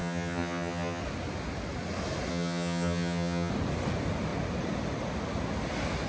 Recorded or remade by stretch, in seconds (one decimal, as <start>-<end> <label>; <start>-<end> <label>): 0.0-1.0 remade; 1.0-2.3 recorded; 2.3-3.5 remade; 3.5-6.1 recorded